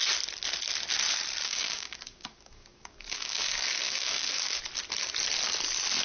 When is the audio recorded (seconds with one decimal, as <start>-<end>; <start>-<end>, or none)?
0.0-1.4; 4.6-6.0